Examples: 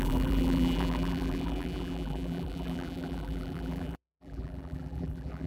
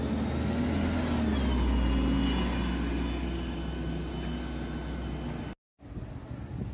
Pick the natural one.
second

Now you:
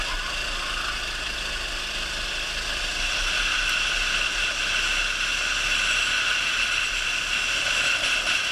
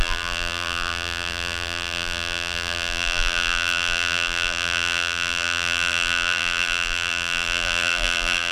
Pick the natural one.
first